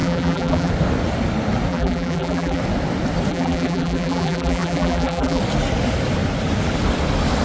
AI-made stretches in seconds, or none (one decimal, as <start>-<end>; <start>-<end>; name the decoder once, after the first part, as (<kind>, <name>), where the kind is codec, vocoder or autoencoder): 0.0-0.7 (vocoder, BigVGAN v2); 1.7-2.6; 3.3-5.4